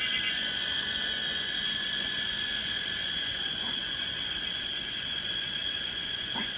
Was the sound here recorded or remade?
remade